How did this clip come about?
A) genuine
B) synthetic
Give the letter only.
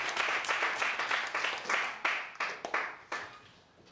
A